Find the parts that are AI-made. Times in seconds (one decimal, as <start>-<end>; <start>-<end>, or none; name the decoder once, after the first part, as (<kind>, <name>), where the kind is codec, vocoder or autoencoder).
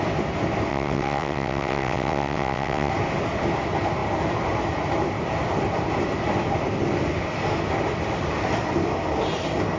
0.7-2.9 (vocoder, WaveNeXt)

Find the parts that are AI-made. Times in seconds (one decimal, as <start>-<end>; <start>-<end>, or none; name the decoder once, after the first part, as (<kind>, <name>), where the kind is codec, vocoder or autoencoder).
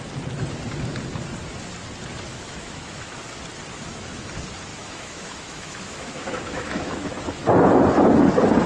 2.3-3.2 (autoencoder, DAC-VAE); 3.7-4.3; 4.7-7.1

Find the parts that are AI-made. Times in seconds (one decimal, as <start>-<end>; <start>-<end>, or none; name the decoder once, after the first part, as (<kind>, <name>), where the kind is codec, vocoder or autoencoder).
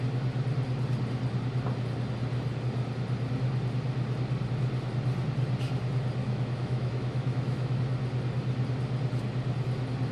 6.2-7.8 (autoencoder, DAC-VAE)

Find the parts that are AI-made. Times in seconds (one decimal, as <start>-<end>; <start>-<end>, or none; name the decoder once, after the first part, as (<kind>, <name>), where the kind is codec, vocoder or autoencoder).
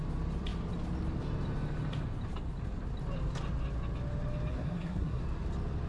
4.5-5.2 (codec, SNAC)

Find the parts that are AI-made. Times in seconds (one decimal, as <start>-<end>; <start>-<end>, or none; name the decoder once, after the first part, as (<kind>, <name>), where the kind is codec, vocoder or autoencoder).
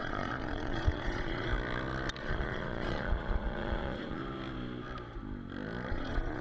0.0-1.5 (vocoder, Vocos); 2.2-4.2; 5.9-6.4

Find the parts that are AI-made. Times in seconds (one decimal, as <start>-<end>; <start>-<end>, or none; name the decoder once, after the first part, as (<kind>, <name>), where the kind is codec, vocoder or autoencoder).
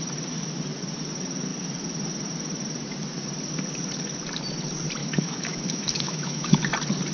5.0-6.6 (autoencoder, DAC-VAE)